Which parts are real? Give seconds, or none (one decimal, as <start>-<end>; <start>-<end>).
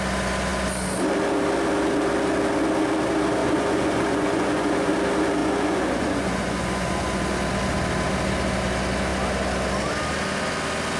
0.0-3.4; 4.9-5.4; 7.2-11.0